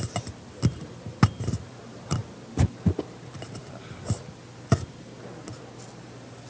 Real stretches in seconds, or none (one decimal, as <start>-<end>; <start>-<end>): 0.0-6.5